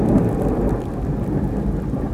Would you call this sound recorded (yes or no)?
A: yes